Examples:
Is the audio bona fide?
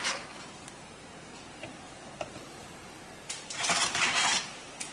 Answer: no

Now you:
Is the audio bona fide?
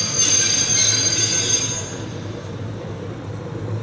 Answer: yes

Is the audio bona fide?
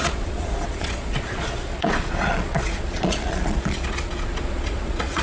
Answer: no